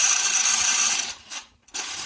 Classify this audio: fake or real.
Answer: fake